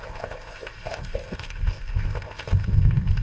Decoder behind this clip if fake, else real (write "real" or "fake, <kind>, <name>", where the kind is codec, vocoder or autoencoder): fake, codec, ZipCodec